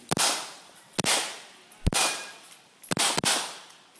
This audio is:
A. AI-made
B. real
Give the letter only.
B